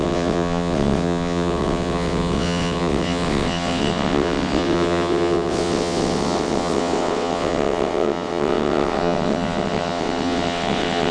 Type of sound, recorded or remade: remade